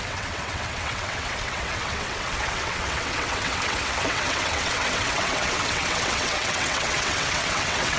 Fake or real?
fake